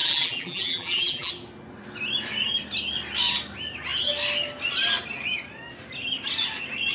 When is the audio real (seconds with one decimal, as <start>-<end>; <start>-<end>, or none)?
1.3-6.9